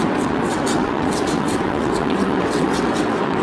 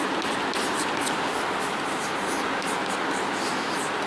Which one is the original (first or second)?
second